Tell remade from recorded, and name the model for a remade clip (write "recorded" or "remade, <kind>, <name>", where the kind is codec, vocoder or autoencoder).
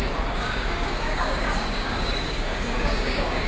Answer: remade, codec, DAC